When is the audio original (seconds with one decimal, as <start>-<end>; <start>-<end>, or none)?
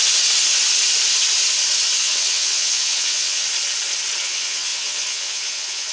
0.0-2.0; 3.4-4.2